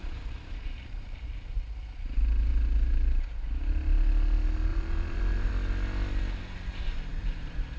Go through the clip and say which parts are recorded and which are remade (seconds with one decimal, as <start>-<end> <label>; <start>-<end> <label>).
0.0-1.6 remade; 1.6-4.7 recorded; 4.7-5.5 remade; 5.5-7.1 recorded; 7.1-7.8 remade